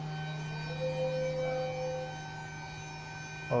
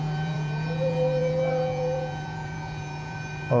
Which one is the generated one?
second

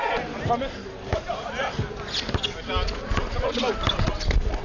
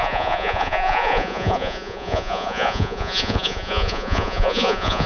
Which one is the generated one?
second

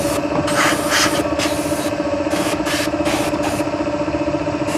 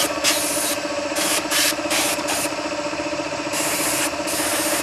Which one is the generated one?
second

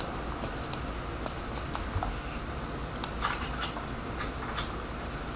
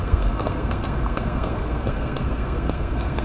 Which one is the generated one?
second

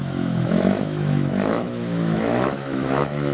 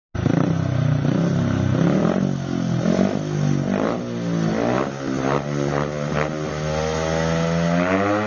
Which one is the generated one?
first